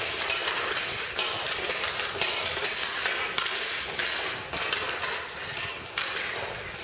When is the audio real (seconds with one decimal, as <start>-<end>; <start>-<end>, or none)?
0.0-6.8